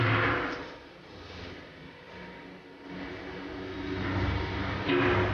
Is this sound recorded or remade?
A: recorded